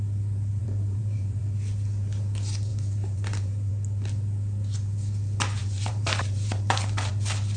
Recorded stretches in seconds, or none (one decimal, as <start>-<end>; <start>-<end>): 0.0-0.6; 1.4-2.7; 3.7-5.6; 7.1-7.6